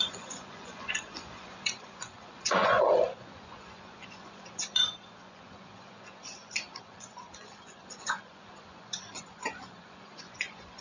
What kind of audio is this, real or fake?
fake